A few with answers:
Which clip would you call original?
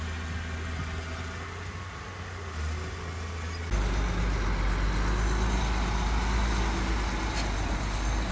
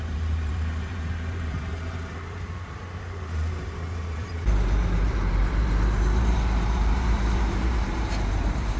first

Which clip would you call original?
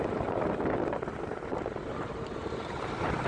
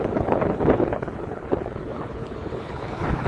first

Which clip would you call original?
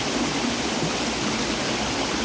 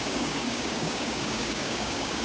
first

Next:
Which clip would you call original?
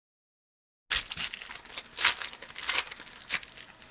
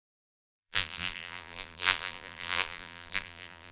first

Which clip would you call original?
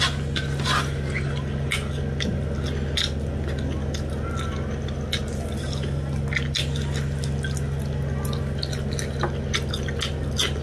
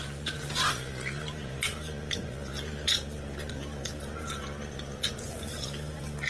first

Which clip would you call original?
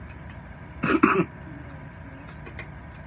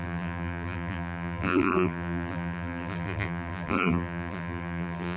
first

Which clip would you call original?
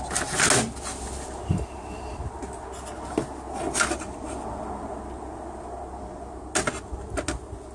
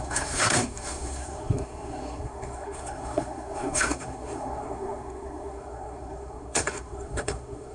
first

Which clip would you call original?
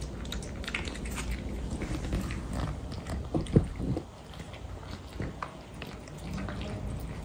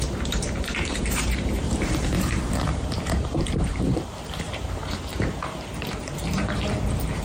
first